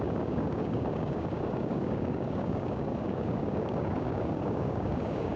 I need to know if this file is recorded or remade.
remade